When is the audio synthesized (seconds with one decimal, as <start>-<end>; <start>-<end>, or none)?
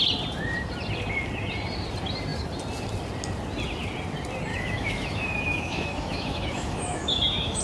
4.5-7.6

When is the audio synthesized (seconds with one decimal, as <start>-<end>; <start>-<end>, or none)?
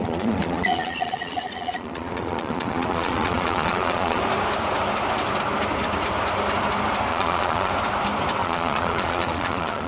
0.0-4.2; 7.1-7.7; 8.4-9.9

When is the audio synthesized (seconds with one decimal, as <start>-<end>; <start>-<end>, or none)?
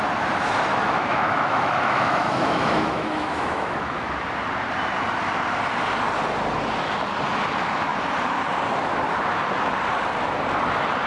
0.7-4.1